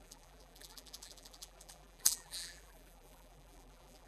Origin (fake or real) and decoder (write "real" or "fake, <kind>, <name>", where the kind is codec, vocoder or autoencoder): fake, vocoder, BigVGAN v2